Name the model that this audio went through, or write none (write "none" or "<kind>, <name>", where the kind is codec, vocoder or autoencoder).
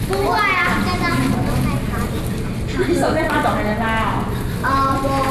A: none